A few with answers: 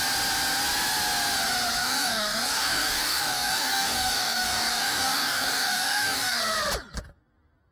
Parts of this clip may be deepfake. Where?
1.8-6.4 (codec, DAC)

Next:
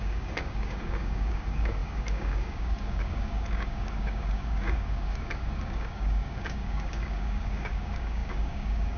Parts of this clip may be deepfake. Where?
0.0-9.0 (codec, DAC)

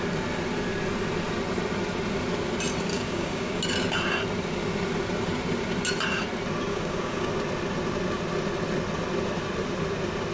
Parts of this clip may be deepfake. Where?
2.9-3.6 (codec, DAC); 6.7-7.3

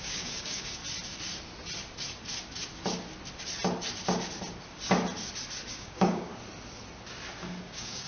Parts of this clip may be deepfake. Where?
0.0-0.8 (codec, DAC); 5.7-6.3; 7.6-8.1

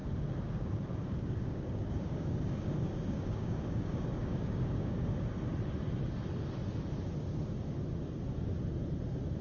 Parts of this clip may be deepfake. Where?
0.0-5.1 (codec, DAC)